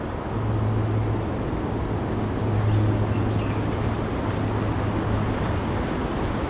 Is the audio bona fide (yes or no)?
yes